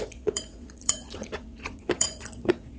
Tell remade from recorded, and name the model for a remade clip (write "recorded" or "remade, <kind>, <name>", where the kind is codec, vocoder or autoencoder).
remade, vocoder, Vocos